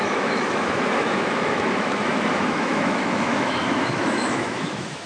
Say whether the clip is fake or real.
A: fake